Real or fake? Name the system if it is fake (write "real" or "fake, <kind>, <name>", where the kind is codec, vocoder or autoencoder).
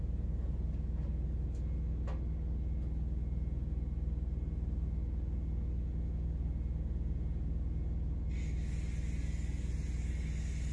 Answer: real